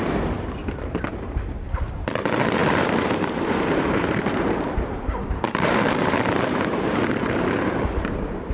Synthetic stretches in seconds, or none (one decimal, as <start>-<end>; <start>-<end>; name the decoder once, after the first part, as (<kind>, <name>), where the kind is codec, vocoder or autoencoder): 1.1-1.8 (vocoder, BigVGAN v2); 2.6-7.7

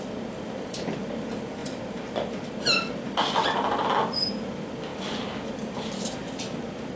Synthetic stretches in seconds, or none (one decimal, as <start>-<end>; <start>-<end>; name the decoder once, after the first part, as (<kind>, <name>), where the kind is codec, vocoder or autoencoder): none

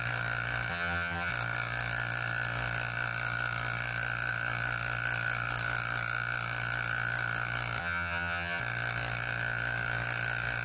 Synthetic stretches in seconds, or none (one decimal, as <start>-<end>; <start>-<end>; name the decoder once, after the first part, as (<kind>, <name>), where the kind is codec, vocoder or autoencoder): 0.7-1.3 (vocoder, HiFi-GAN); 7.8-8.6

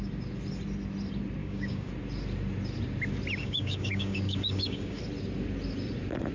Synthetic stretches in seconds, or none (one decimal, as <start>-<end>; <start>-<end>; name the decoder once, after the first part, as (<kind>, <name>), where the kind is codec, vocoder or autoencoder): 1.4-1.9 (codec, DAC); 3.4-5.0